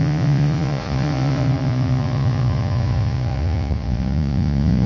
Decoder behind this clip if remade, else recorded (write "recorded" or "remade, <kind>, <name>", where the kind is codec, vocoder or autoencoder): remade, vocoder, Vocos